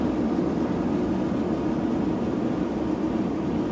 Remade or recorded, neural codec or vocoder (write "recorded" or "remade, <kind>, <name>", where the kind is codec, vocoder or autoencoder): recorded